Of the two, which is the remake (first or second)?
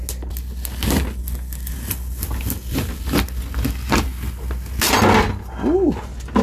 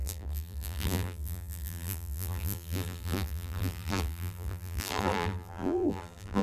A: second